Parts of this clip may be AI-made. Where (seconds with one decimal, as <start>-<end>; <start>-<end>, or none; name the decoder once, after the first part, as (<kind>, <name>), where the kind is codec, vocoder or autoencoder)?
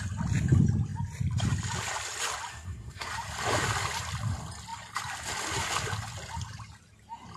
2.5-3.1 (codec, SNAC)